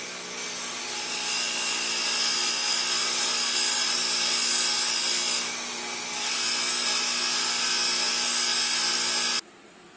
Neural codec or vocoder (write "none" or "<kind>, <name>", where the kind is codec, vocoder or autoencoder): none